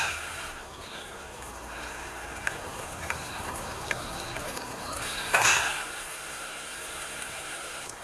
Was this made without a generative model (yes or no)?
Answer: no